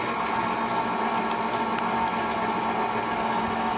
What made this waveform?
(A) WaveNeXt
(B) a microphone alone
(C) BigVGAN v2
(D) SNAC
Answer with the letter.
B